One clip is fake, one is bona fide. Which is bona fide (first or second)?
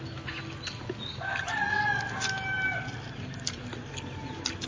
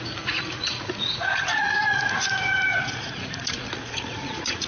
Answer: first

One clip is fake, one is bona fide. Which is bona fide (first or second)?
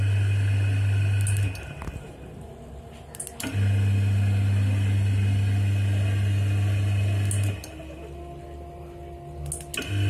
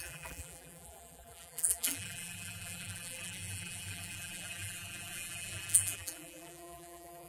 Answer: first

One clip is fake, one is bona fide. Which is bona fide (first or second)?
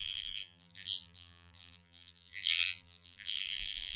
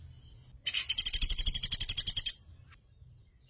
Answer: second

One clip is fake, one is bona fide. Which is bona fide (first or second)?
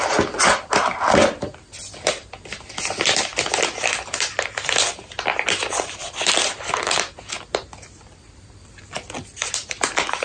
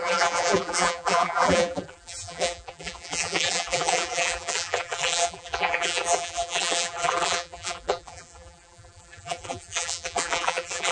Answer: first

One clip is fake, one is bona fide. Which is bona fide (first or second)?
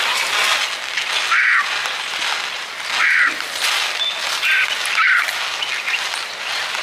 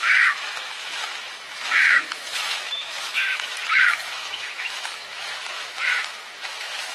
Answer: first